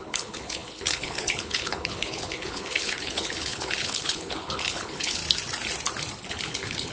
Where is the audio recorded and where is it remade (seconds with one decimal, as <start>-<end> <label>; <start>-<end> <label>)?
0.0-5.2 remade; 5.2-6.3 recorded; 6.3-6.9 remade